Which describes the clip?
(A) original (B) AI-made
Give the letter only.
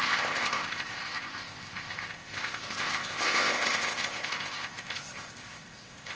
B